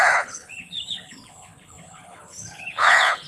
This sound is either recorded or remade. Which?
remade